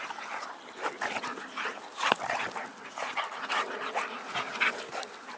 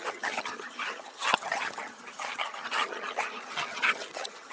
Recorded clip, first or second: first